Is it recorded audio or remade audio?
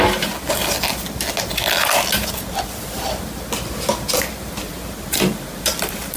recorded